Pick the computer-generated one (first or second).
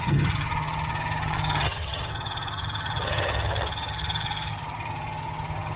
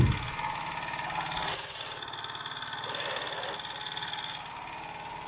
first